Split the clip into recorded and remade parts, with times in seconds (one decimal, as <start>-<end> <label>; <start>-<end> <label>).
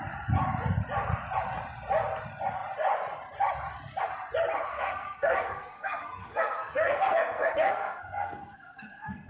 0.0-4.7 recorded; 4.7-9.3 remade